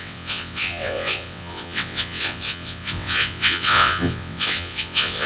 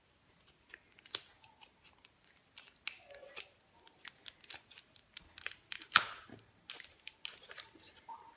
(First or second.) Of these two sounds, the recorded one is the second